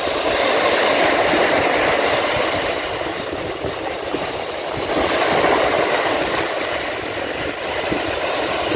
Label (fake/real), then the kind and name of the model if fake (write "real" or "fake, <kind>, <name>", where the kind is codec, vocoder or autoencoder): fake, vocoder, BigVGAN v2